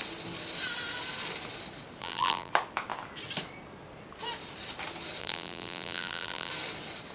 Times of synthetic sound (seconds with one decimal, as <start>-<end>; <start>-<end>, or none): 2.0-2.5; 5.2-6.5